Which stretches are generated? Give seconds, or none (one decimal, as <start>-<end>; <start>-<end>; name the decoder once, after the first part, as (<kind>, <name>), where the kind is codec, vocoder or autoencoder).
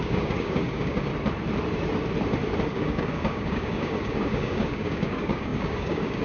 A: 0.0-1.1 (codec, DAC); 2.7-6.2